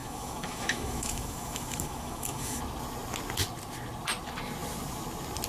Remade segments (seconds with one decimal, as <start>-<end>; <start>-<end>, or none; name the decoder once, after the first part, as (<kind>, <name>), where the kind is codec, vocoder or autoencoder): 0.0-2.6 (autoencoder, DAC-VAE)